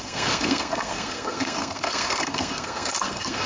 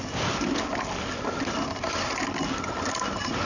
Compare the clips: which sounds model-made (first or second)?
first